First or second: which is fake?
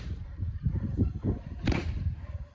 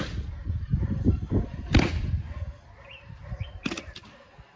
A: first